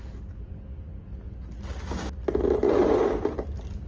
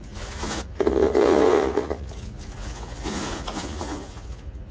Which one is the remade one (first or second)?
second